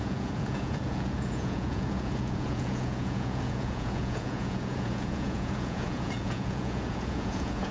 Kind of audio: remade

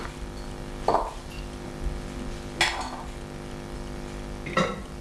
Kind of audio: recorded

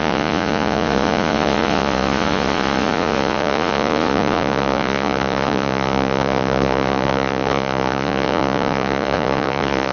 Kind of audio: remade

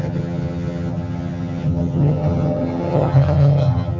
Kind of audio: remade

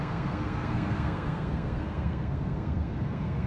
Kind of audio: remade